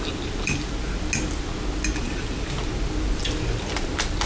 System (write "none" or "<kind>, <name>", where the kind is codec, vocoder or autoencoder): none